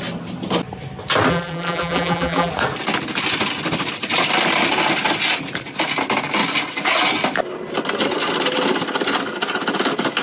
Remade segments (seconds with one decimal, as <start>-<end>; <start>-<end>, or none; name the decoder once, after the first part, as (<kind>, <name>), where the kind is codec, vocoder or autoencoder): 1.3-2.5 (vocoder, BigVGAN v2)